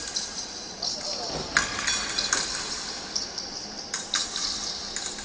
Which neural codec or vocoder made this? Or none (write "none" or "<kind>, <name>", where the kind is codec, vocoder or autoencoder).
none